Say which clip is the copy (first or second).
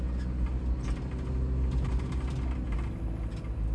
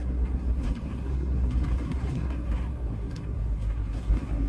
second